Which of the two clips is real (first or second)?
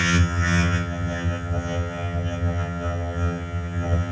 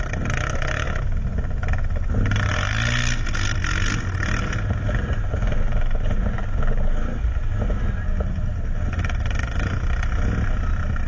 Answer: second